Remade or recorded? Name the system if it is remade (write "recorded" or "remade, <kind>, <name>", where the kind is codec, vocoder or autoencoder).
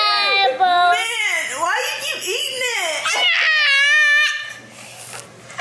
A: recorded